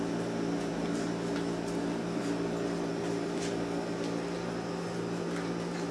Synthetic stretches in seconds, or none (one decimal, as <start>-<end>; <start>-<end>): none